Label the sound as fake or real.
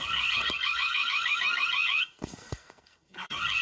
fake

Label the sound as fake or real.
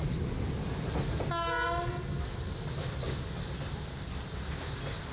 real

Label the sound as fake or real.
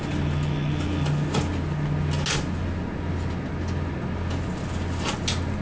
real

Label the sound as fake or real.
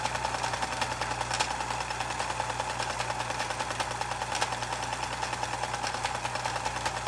real